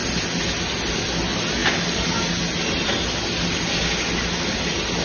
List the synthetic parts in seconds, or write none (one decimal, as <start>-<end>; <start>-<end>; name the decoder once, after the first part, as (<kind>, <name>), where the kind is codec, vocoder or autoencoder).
none